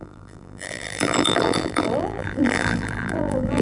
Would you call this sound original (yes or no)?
no